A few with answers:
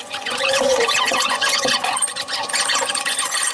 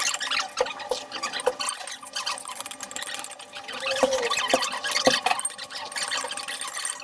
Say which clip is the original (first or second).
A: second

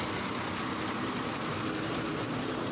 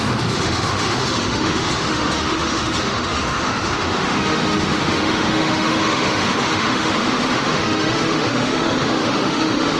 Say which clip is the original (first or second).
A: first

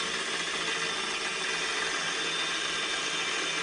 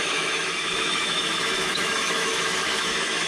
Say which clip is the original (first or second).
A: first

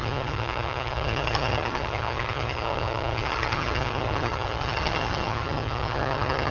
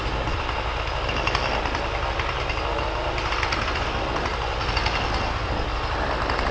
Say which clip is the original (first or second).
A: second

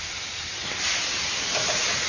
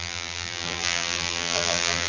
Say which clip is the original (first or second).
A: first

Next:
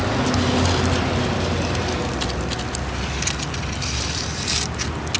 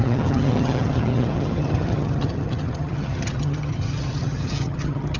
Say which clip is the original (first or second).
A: first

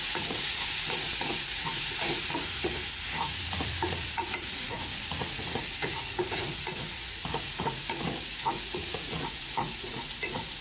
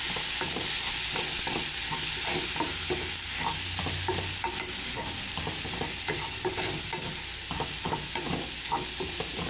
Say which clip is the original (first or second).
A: second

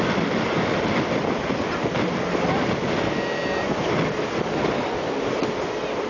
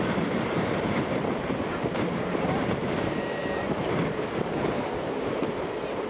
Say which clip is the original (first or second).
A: first